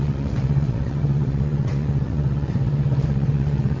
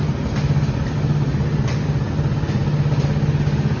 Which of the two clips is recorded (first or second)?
second